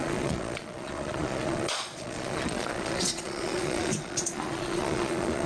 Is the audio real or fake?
fake